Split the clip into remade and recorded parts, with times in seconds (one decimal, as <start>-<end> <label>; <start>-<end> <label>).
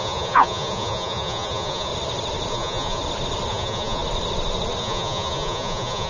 0.0-1.9 remade; 1.9-2.5 recorded; 2.5-3.0 remade; 3.0-3.5 recorded; 3.5-4.0 remade; 4.0-4.8 recorded; 4.8-6.1 remade